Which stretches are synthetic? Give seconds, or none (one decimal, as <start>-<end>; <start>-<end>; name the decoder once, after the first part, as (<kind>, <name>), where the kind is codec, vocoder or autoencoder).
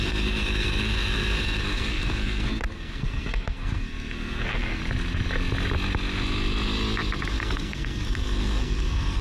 0.0-4.8 (codec, SNAC); 7.3-9.2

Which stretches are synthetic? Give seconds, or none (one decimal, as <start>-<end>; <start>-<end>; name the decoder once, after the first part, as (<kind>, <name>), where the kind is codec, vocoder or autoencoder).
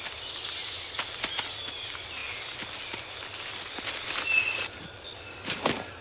none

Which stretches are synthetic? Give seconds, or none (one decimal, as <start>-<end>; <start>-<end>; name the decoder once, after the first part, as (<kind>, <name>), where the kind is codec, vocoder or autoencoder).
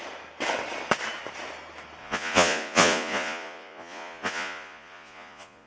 2.0-5.7 (vocoder, Vocos)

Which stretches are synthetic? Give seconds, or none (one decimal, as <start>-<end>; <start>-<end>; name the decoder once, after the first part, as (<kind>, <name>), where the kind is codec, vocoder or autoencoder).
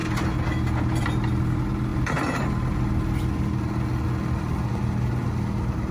none